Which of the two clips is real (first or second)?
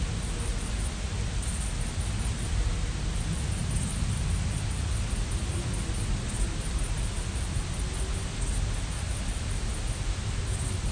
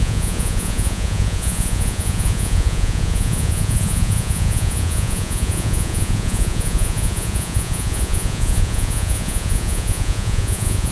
first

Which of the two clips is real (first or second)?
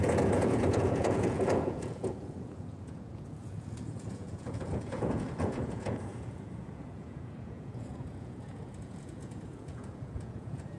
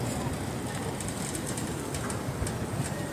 second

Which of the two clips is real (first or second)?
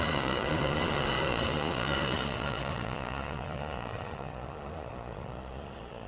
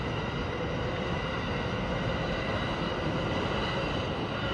second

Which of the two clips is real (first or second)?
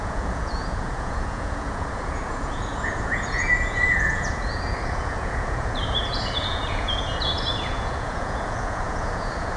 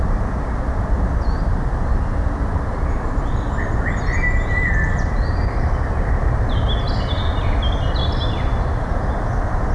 second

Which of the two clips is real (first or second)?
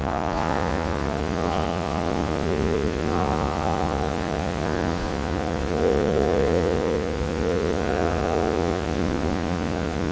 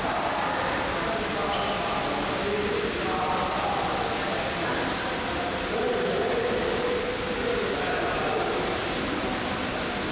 second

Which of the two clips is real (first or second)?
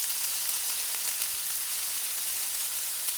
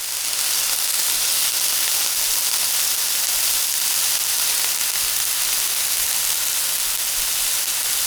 second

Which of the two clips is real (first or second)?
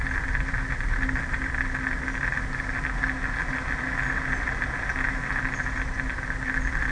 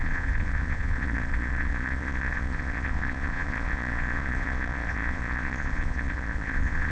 first